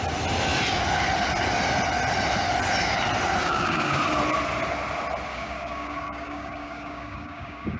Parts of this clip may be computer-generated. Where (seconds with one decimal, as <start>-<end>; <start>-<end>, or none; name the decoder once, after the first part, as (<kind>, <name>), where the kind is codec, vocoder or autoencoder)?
3.4-4.0 (codec, DAC); 5.3-7.8

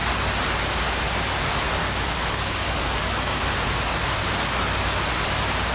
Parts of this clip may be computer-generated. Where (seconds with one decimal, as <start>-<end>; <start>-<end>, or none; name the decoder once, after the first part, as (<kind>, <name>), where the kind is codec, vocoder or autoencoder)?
1.8-3.4 (codec, DAC)

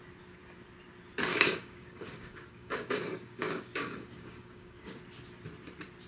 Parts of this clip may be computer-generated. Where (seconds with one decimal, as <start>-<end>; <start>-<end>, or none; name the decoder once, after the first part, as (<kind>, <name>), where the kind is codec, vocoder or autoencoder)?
1.3-5.0 (codec, DAC)

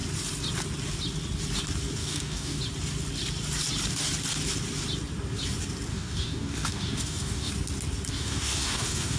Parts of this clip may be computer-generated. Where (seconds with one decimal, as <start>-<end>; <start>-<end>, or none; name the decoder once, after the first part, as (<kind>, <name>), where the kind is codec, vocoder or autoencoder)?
2.0-2.6 (codec, DAC); 5.9-7.5; 8.1-9.2

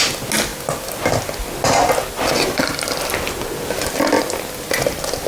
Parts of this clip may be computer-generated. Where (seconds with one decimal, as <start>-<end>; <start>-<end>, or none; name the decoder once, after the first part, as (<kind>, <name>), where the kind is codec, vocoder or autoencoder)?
none